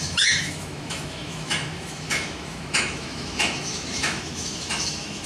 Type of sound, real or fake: fake